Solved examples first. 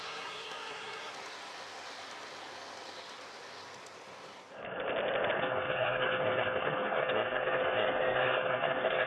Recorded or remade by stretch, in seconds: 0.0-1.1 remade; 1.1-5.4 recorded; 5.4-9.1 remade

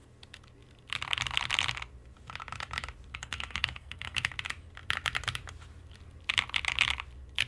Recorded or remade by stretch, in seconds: 0.0-3.1 recorded; 3.1-4.3 remade; 4.3-7.5 recorded

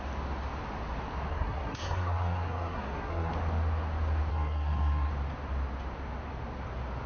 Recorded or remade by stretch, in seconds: 0.0-1.3 recorded; 1.3-3.3 remade; 3.3-4.3 recorded; 4.3-5.1 remade; 5.1-7.1 recorded

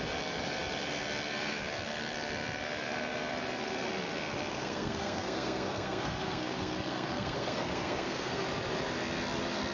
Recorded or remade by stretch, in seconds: 0.0-4.5 recorded; 4.5-8.4 remade; 8.4-9.7 recorded